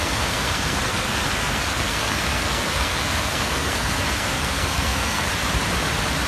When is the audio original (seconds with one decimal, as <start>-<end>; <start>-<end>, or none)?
5.3-6.3